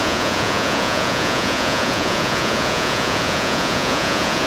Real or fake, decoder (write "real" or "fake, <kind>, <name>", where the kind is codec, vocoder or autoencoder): fake, vocoder, Vocos